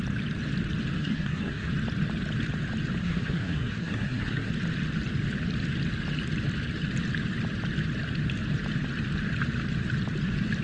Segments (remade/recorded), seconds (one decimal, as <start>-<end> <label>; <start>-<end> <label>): 0.0-1.0 recorded; 1.0-1.7 remade; 1.7-3.0 recorded; 3.0-4.5 remade; 4.5-10.6 recorded